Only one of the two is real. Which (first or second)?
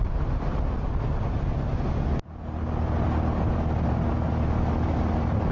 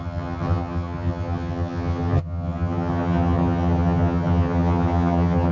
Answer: first